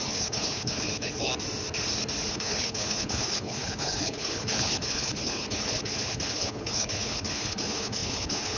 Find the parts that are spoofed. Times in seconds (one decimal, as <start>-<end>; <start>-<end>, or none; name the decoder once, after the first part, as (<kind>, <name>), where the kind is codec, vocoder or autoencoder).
0.0-1.3 (codec, HILCodec); 2.3-8.6